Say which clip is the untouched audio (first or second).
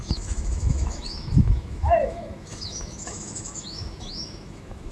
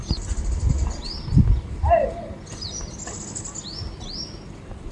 second